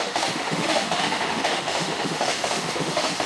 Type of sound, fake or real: fake